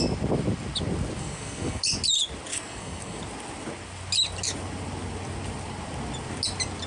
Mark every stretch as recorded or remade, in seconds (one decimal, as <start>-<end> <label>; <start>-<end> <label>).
0.0-1.2 recorded; 1.2-1.8 remade; 1.8-2.5 recorded; 2.5-3.2 remade; 3.2-6.9 recorded